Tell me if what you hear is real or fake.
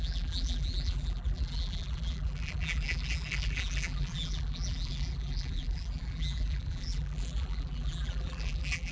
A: fake